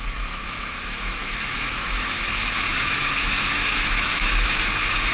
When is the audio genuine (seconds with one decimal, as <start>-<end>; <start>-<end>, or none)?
none